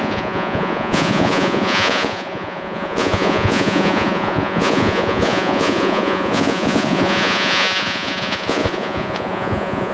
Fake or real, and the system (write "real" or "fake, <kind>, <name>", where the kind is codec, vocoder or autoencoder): fake, vocoder, Vocos